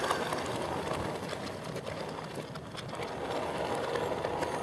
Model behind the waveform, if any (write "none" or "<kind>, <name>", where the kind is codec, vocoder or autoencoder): none